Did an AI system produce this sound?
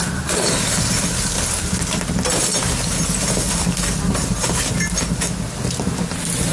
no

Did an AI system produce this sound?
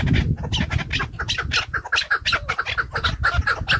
no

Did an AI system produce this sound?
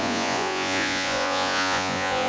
yes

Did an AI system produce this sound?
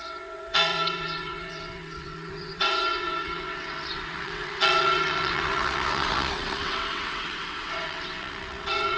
yes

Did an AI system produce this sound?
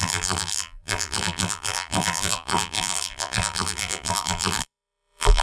yes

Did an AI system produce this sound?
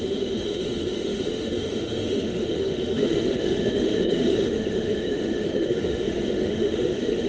yes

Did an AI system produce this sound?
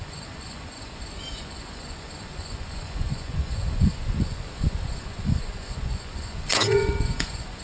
yes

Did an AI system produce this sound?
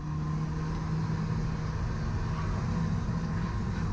no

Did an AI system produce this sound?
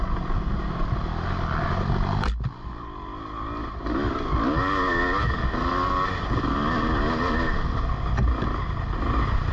no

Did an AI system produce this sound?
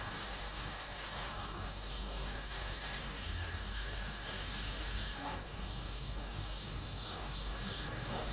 yes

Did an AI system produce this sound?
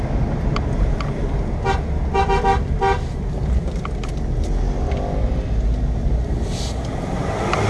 no